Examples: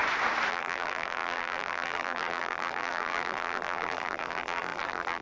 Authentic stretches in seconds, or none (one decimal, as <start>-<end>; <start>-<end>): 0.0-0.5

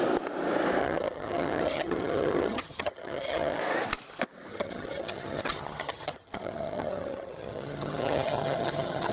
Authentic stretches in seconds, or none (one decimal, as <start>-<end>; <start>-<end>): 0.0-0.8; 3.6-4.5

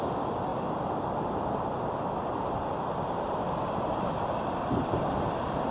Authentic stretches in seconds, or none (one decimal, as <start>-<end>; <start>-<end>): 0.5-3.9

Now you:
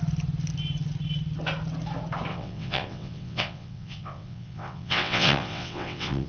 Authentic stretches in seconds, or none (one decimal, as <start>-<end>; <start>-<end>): 0.0-2.3

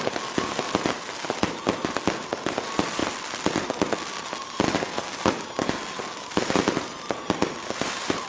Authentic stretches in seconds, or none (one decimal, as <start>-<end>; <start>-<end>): 3.0-6.0

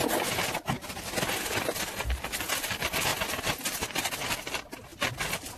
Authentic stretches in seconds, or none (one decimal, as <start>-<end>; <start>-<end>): 0.0-4.9